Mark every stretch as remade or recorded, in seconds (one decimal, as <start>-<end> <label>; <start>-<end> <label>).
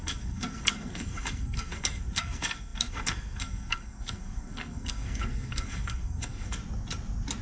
0.0-6.6 remade; 6.6-7.4 recorded